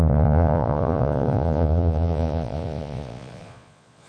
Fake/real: fake